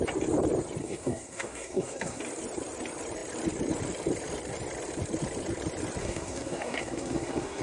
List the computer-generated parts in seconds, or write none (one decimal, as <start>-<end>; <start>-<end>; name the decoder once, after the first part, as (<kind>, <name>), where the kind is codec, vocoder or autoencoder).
0.8-2.2 (codec, SNAC); 6.0-7.6